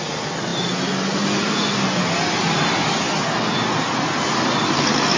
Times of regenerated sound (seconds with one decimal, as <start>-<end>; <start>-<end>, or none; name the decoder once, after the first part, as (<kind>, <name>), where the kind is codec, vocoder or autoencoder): none